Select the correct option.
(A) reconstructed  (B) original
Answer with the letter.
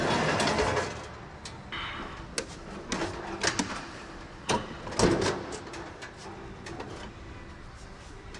B